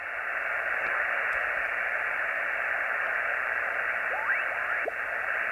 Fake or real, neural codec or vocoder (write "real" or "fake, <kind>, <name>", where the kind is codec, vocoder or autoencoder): real